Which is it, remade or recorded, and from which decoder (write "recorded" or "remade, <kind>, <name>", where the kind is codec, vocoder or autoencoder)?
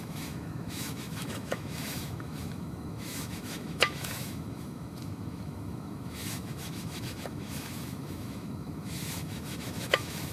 remade, autoencoder, DAC-VAE